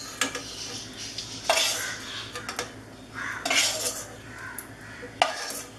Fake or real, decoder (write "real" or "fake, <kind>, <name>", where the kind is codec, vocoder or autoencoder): real